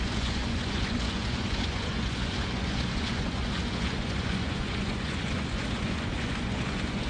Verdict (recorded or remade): remade